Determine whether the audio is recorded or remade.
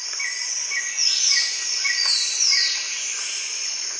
remade